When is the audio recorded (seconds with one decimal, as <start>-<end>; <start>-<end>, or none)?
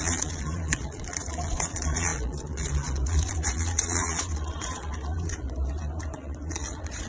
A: none